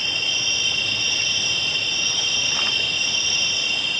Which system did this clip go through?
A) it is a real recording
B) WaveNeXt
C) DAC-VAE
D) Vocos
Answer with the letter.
A